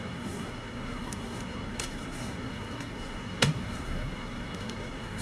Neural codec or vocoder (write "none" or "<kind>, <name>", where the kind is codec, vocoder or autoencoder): codec, SNAC